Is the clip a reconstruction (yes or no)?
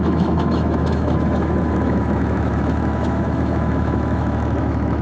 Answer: yes